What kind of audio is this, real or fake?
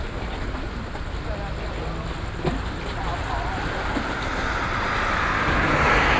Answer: real